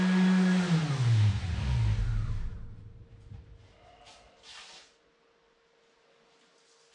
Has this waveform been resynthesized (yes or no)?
no